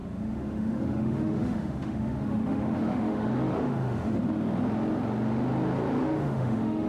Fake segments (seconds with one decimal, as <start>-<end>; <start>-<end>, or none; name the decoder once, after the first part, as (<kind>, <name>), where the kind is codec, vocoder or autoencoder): 0.0-4.2 (autoencoder, DAC-VAE); 6.0-6.9